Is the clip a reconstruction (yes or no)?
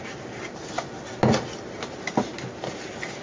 no